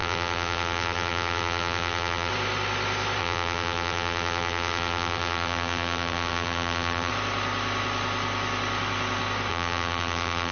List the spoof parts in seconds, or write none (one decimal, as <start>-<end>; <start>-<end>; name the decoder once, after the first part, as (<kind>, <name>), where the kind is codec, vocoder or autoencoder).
0.0-2.3 (vocoder, BigVGAN v2); 3.2-7.1; 9.5-10.5